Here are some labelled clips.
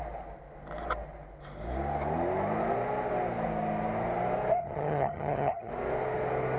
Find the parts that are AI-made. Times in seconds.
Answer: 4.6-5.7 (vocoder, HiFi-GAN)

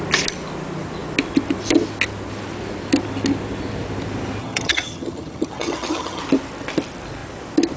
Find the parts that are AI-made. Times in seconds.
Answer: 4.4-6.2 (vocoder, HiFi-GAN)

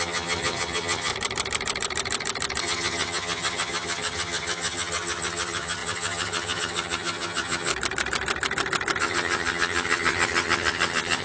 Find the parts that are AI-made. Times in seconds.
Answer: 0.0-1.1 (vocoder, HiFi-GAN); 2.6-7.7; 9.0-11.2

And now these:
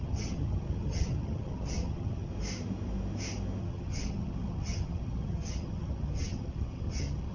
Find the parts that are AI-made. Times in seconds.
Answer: 0.0-2.3 (vocoder, HiFi-GAN); 3.6-7.3